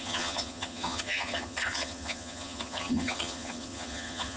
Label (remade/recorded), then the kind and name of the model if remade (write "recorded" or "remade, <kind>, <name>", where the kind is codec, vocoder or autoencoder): remade, vocoder, HiFi-GAN